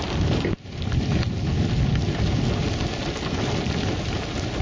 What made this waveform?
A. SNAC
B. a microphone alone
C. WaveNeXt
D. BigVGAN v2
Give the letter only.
B